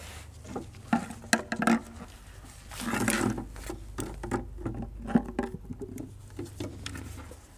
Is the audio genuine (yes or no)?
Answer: yes